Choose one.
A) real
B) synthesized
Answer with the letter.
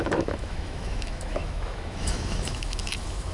B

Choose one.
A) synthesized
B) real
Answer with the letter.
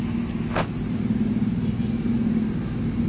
B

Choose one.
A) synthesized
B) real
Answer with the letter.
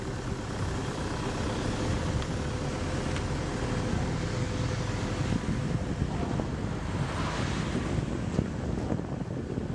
B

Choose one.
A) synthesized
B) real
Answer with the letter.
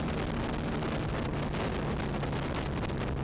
B